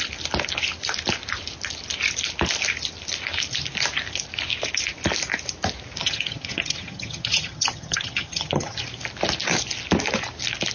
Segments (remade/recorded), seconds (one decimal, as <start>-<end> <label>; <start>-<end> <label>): 0.0-6.0 recorded; 6.0-8.8 remade; 8.8-10.7 recorded